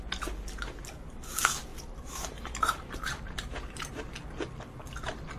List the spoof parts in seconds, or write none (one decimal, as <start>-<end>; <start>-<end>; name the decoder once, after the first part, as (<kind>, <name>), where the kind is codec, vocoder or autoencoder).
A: 1.7-3.9 (vocoder, BigVGAN v2)